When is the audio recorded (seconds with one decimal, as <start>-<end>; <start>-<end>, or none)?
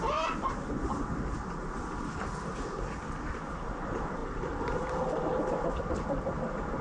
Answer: 0.0-6.8